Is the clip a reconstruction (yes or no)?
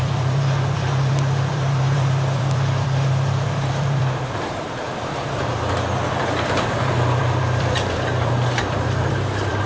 yes